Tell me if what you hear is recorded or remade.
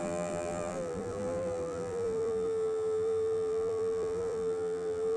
remade